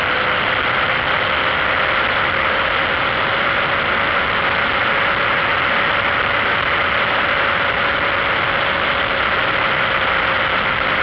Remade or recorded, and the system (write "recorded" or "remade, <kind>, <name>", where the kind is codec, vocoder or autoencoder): recorded